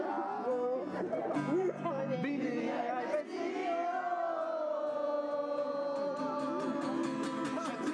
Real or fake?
real